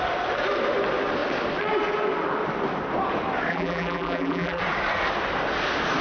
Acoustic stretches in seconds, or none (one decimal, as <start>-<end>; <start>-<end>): 0.0-3.5; 4.6-6.0